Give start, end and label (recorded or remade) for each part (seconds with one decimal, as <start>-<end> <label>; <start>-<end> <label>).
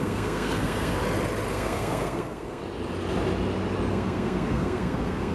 0.0-1.0 remade; 1.0-1.5 recorded; 1.5-2.6 remade; 2.6-3.9 recorded; 3.9-5.3 remade